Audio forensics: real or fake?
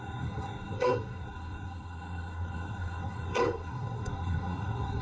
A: fake